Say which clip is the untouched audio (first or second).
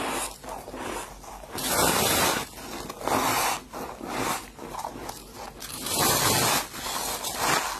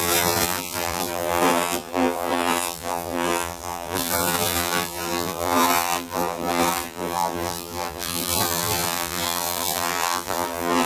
first